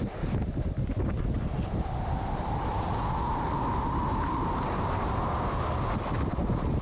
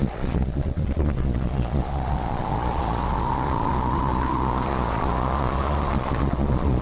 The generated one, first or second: second